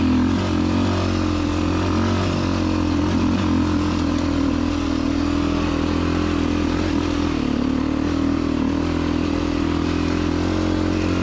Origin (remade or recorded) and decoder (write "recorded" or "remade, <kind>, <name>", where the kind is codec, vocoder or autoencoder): recorded